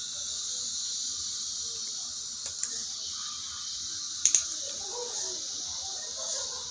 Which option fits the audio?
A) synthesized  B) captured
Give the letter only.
B